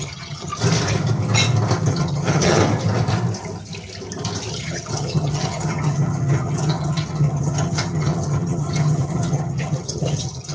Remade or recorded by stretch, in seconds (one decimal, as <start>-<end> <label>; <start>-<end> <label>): 0.0-0.5 remade; 0.5-1.9 recorded; 1.9-2.6 remade; 2.6-4.5 recorded; 4.5-10.5 remade